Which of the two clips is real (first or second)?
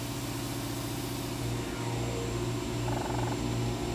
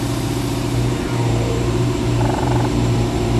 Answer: first